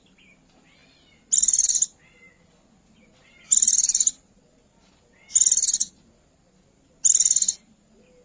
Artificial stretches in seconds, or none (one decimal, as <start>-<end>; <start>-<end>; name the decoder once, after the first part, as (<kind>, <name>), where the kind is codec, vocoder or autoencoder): none